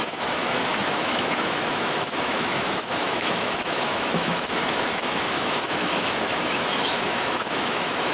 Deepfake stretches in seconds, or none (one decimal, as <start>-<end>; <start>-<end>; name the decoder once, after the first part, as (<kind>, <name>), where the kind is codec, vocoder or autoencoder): 0.0-8.1 (autoencoder, DAC-VAE)

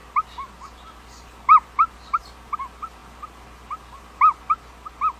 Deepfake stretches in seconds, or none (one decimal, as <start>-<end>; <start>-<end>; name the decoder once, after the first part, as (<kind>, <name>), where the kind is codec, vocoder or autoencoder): none

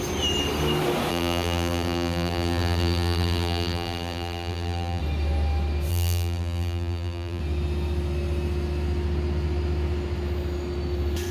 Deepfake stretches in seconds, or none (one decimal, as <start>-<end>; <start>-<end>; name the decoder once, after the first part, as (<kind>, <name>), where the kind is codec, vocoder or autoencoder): 1.1-5.0 (vocoder, BigVGAN v2); 5.9-7.4

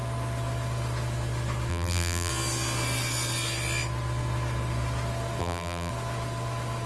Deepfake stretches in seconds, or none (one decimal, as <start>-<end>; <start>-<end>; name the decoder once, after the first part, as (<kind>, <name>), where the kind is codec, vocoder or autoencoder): 1.7-2.3 (vocoder, BigVGAN v2); 5.4-5.9

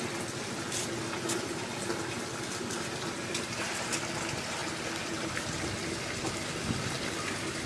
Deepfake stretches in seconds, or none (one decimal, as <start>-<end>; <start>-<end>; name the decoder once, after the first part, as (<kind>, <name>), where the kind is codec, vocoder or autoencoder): none

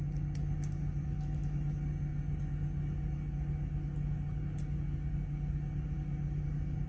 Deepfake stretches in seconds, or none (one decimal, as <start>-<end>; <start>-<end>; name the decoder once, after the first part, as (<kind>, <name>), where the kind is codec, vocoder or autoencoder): 1.0-1.7 (autoencoder, DAC-VAE)

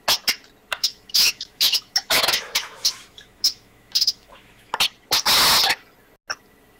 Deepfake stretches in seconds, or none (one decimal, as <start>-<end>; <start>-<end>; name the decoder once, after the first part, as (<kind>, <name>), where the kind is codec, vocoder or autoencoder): 0.7-4.7 (autoencoder, DAC-VAE)